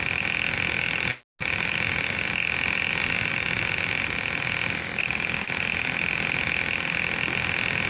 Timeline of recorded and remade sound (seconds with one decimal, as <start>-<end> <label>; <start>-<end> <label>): 0.0-7.9 recorded